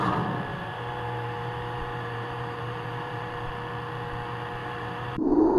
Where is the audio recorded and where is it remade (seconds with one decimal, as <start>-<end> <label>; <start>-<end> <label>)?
0.0-0.5 recorded; 0.5-3.5 remade; 3.5-4.6 recorded; 4.6-5.6 remade